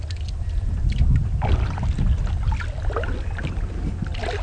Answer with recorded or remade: recorded